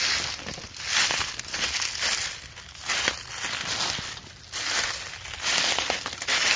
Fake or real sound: real